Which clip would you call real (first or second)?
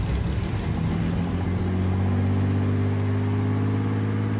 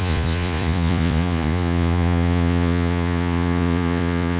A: first